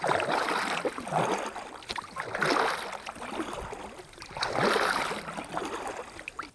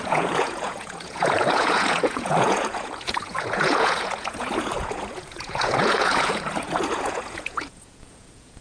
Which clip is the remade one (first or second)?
second